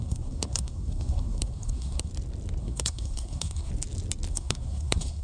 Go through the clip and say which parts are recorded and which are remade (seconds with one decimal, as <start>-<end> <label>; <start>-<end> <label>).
0.0-2.1 remade; 2.1-2.6 recorded; 2.6-3.7 remade; 3.7-4.3 recorded; 4.3-5.2 remade